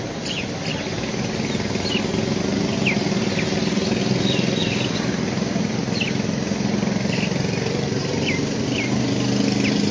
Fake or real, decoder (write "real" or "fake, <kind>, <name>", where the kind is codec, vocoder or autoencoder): real